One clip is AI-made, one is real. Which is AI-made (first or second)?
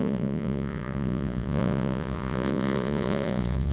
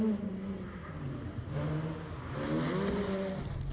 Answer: first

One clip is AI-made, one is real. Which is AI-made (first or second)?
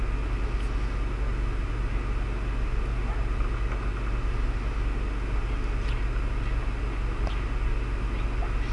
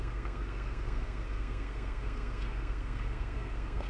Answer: second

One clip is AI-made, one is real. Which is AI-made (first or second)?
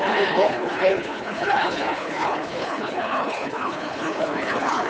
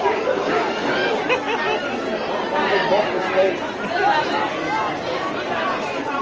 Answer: first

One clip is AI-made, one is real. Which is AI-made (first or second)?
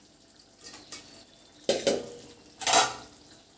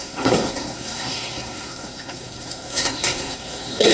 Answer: second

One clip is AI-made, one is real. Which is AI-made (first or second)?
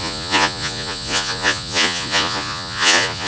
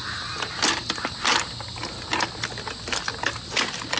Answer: first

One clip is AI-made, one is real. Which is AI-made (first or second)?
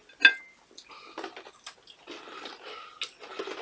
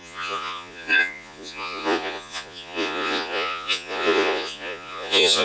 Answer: second